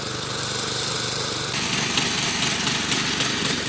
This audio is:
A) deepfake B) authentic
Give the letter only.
B